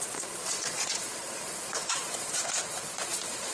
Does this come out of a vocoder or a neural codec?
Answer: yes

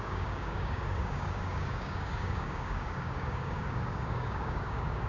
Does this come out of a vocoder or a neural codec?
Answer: yes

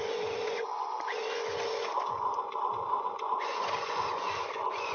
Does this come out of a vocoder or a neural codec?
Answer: yes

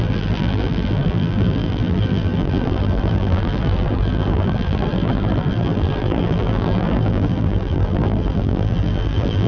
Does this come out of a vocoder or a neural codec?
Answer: yes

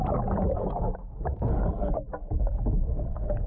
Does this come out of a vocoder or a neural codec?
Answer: no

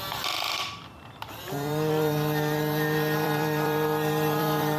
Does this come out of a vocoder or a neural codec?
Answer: yes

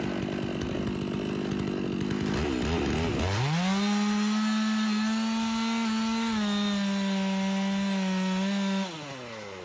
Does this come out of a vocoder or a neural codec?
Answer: no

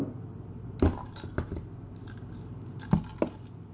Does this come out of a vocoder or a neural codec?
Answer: no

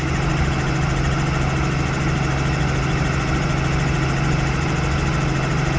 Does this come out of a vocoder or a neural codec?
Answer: no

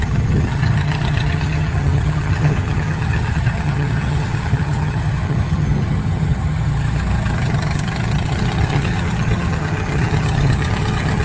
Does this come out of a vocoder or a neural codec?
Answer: yes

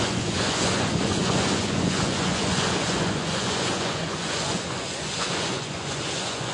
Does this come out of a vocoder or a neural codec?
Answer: yes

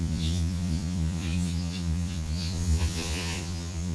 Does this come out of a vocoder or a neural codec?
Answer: yes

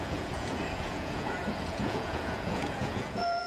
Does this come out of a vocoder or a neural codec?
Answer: yes